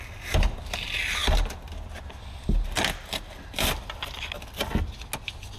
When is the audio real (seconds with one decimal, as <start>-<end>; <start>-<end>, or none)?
0.0-5.6